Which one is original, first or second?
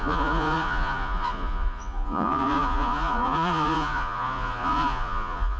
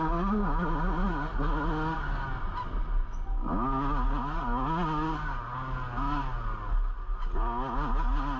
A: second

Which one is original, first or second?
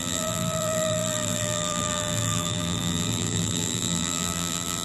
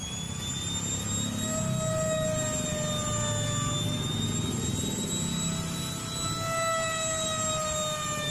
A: second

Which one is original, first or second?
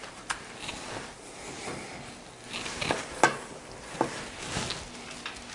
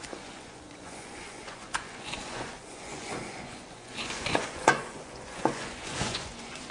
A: first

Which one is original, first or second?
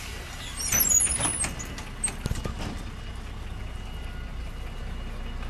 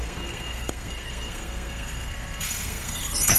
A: first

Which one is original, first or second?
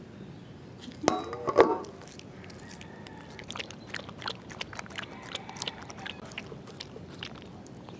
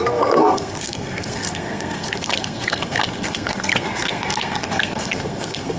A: first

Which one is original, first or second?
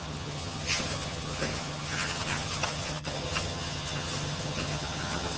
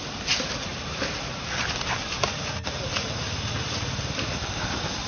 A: second